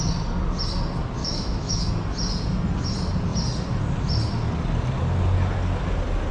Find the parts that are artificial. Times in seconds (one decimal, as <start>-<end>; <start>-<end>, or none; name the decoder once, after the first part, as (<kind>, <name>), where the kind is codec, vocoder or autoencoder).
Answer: 1.2-1.9 (autoencoder, DAC-VAE)